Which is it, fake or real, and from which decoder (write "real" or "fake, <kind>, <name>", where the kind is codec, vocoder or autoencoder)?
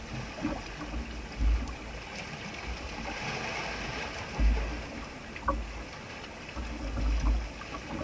real